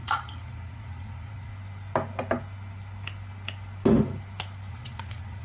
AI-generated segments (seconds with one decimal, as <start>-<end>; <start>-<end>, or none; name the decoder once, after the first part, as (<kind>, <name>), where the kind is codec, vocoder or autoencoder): 0.0-1.5 (vocoder, Vocos); 4.7-5.4